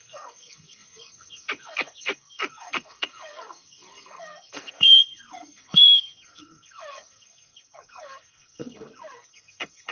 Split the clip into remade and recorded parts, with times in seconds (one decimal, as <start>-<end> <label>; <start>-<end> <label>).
0.0-9.9 remade